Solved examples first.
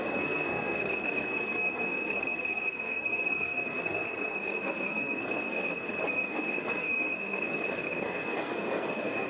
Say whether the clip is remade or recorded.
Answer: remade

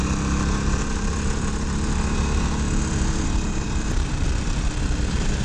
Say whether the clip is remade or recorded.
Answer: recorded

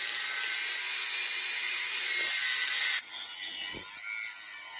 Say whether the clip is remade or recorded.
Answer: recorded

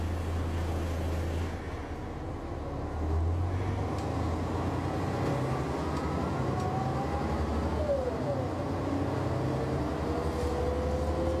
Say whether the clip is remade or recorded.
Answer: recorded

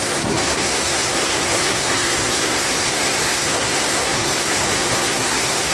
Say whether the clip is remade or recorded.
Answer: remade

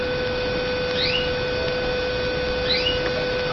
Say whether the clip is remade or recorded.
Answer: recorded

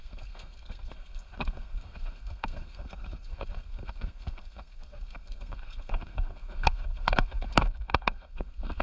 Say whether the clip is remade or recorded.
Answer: remade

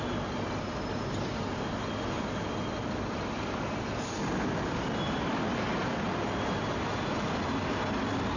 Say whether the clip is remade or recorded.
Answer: recorded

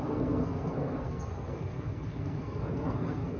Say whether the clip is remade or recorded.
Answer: remade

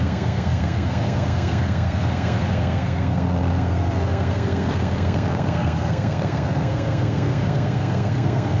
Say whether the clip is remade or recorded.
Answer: remade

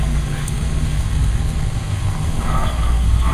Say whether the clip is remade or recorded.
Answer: remade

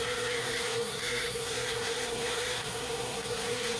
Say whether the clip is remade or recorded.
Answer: remade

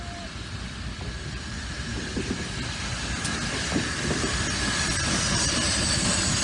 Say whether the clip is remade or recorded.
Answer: recorded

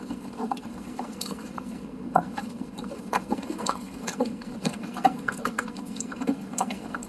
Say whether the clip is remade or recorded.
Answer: remade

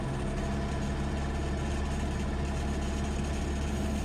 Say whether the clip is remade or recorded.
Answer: recorded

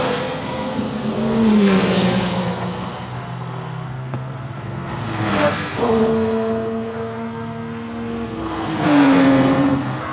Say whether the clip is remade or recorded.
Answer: remade